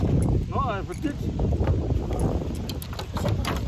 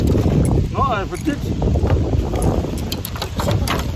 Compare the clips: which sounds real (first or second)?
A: first